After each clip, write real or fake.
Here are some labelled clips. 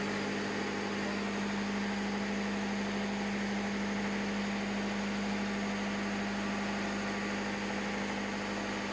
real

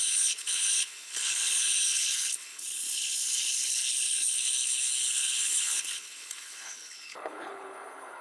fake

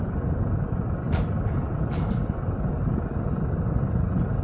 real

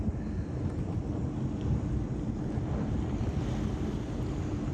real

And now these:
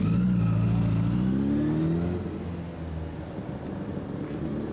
real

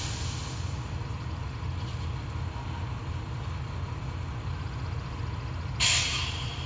real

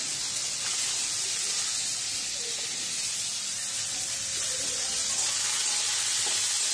real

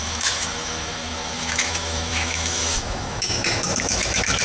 fake